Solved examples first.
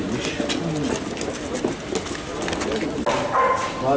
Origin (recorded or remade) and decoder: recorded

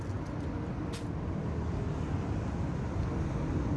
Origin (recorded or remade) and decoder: recorded